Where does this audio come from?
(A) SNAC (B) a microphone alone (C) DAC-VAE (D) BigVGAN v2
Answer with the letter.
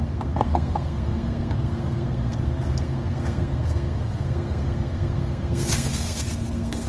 A